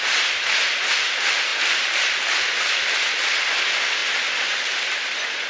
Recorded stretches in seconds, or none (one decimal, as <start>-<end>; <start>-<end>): 0.0-5.5